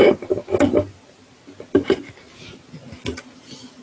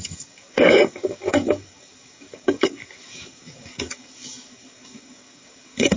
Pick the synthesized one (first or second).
second